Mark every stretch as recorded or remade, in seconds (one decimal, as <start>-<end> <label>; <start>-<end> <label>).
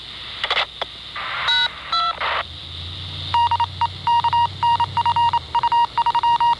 0.0-6.6 recorded